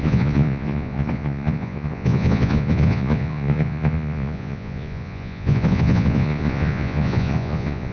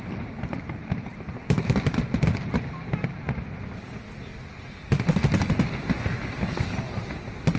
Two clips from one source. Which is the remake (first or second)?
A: first